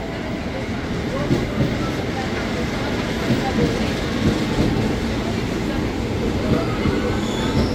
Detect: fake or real real